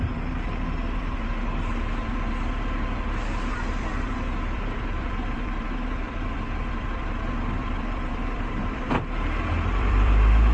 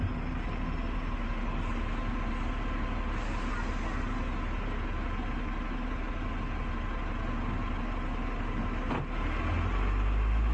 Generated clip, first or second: first